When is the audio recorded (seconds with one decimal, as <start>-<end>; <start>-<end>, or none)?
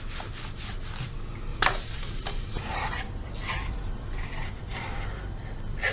0.0-1.5; 5.0-5.9